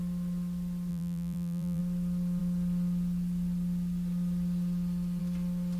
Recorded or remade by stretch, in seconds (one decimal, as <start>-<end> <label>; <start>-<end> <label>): 0.0-0.9 recorded; 0.9-1.8 remade; 1.8-5.8 recorded